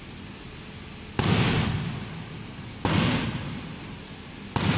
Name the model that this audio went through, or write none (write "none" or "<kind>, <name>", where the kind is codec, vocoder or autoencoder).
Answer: none